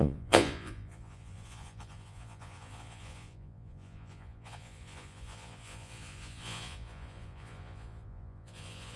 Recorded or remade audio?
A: remade